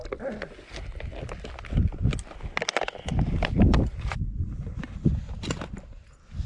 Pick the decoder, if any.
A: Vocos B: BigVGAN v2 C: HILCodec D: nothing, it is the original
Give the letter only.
D